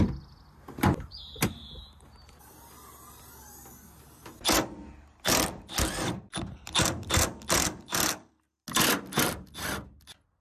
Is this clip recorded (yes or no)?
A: yes